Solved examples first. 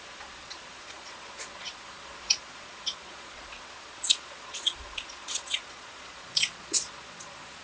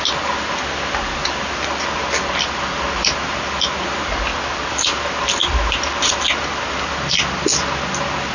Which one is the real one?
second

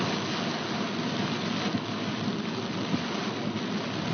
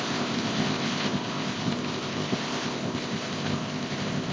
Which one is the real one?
first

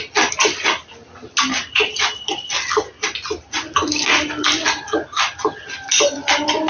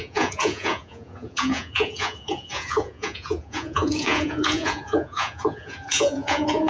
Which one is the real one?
first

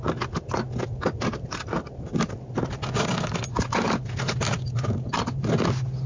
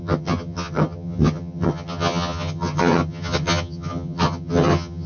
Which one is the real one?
first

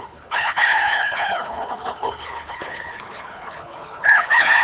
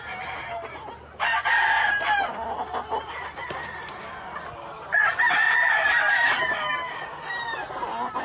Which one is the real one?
second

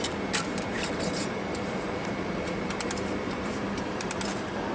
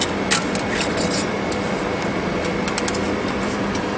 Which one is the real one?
second